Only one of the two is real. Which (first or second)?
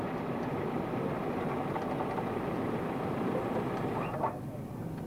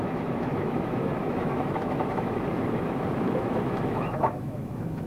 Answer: first